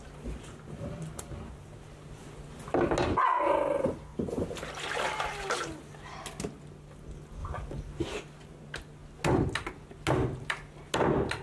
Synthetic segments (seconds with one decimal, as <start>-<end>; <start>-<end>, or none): none